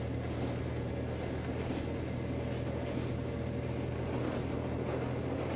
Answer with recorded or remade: recorded